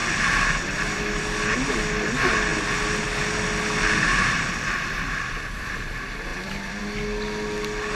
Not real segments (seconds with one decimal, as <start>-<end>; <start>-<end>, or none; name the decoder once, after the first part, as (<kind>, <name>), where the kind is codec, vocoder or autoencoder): 6.3-6.8 (vocoder, BigVGAN v2)